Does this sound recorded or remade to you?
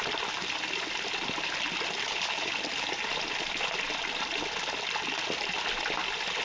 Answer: recorded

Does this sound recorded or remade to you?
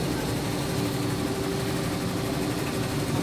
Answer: recorded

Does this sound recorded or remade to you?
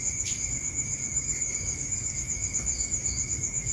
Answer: remade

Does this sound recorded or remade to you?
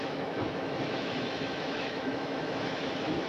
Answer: remade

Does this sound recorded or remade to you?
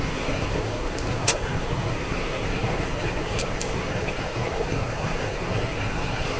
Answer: remade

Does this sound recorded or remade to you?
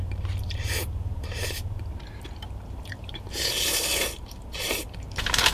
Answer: remade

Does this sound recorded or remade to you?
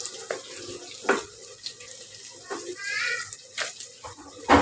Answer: recorded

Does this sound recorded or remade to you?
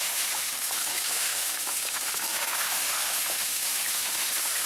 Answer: remade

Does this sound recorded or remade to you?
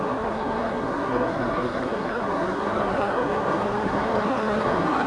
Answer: remade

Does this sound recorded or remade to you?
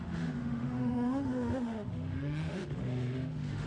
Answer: remade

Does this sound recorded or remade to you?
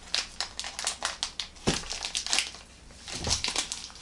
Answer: recorded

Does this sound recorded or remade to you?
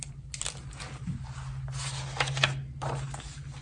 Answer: recorded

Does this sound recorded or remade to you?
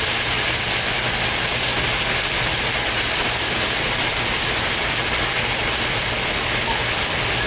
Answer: recorded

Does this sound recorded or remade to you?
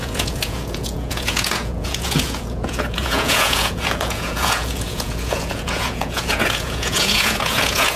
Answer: remade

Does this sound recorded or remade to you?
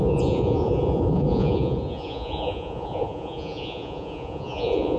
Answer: remade